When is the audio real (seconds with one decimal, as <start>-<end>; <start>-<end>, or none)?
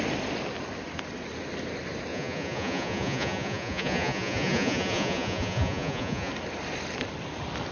0.0-2.1; 6.3-7.7